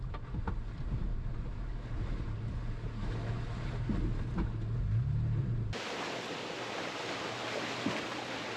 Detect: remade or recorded recorded